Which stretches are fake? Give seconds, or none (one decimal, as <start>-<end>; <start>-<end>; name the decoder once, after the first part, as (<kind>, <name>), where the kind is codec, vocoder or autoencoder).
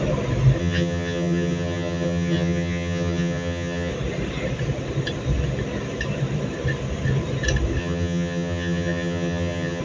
0.6-3.9 (vocoder, HiFi-GAN); 7.8-9.8